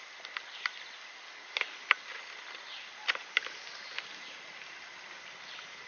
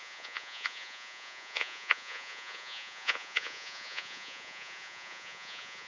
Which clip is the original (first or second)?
first